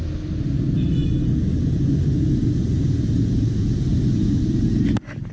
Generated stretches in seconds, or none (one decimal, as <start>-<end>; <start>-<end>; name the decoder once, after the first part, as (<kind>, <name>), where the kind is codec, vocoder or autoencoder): none